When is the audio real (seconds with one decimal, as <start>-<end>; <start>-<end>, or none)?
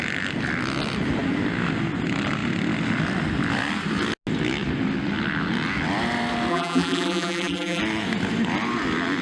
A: 0.0-6.5; 7.8-9.2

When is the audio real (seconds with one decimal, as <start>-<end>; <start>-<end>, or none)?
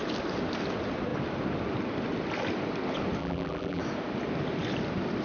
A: 0.0-3.2; 3.8-5.2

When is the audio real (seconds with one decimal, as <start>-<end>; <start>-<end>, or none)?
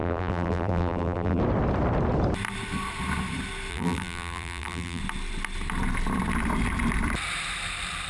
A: 1.4-3.7; 5.0-8.1